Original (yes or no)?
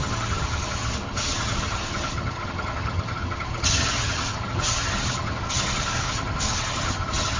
no